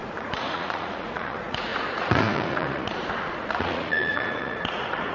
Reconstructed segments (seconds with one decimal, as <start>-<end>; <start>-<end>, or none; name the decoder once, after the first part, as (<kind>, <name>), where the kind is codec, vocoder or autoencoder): 0.0-5.1 (vocoder, Vocos)